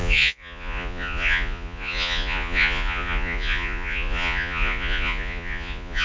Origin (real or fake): fake